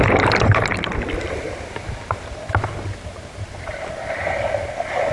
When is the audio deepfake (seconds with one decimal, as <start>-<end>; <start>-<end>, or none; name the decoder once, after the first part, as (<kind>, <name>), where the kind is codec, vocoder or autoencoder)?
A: none